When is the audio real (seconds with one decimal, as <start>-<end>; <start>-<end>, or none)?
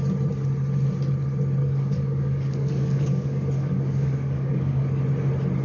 0.0-1.6; 5.0-5.6